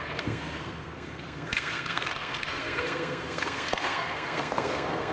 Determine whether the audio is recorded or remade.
remade